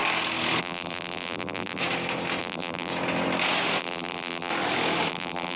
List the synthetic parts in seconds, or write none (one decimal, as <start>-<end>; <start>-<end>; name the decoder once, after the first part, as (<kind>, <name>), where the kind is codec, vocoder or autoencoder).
0.6-1.8 (vocoder, BigVGAN v2); 2.4-2.9; 3.8-4.5; 5.1-5.6